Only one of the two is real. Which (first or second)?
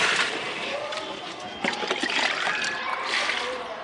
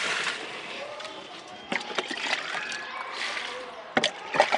second